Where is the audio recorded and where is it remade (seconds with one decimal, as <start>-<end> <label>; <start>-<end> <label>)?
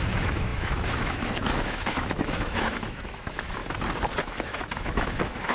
0.0-3.6 remade; 3.6-4.2 recorded; 4.2-5.5 remade